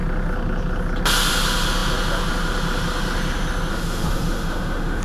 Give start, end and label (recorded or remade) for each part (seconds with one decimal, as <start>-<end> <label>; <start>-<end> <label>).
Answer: 0.0-3.7 recorded; 3.7-5.0 remade